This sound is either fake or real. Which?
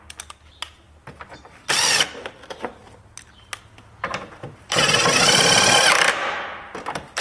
real